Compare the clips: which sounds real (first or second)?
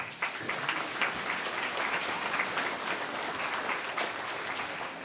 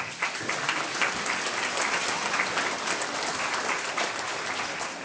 first